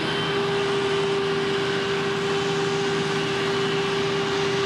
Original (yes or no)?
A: yes